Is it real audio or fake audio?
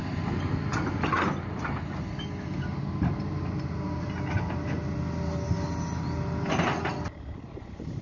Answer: real